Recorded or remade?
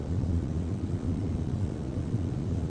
remade